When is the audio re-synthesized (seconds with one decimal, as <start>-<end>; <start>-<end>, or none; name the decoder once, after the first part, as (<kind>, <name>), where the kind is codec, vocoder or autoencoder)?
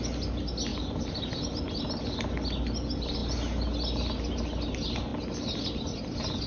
none